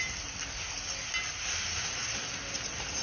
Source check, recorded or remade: recorded